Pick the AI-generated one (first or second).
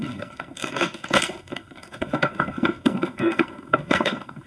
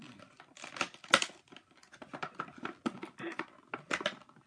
first